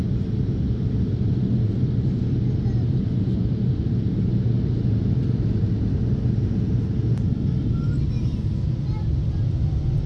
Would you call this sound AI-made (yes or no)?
no